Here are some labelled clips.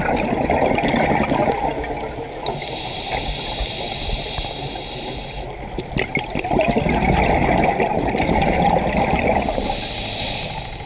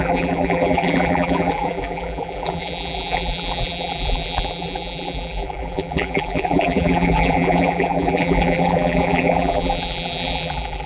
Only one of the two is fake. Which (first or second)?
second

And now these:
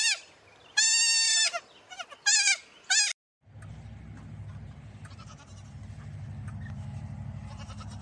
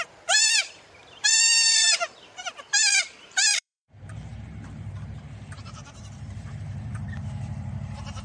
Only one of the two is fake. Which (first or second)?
second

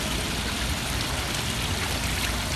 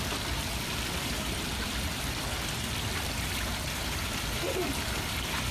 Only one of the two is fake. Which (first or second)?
second